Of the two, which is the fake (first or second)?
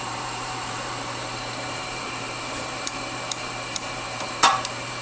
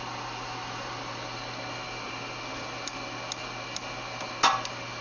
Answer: first